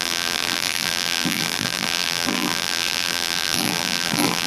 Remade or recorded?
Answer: remade